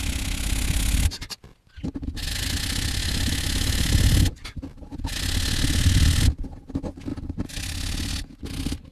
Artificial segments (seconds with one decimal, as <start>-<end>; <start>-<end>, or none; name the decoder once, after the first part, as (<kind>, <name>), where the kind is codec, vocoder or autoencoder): 3.0-3.9 (autoencoder, DAC-VAE)